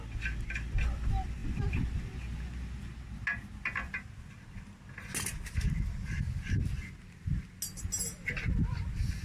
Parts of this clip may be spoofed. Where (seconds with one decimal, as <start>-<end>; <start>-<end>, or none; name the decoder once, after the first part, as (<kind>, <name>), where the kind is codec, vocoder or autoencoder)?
none